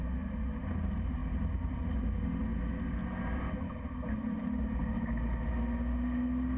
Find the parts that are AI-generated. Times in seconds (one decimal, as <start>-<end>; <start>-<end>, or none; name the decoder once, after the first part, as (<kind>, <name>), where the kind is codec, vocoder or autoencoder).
none